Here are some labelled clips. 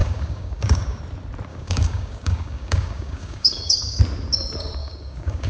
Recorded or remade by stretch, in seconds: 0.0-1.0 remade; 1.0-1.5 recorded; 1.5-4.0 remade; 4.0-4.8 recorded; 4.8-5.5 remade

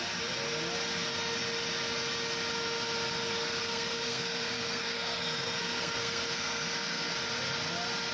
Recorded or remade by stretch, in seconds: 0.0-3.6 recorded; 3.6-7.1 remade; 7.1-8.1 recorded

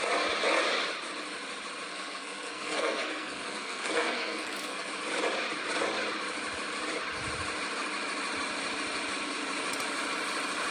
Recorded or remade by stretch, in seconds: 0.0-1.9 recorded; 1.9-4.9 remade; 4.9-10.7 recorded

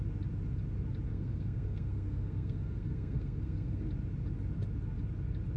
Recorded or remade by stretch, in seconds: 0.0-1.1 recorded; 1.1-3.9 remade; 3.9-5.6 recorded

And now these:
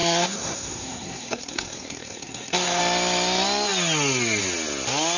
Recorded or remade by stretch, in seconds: 0.0-2.8 remade; 2.8-5.2 recorded